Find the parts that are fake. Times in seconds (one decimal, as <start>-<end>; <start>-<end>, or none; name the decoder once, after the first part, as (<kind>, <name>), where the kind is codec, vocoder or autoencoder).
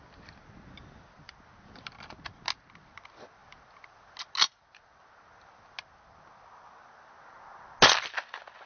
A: none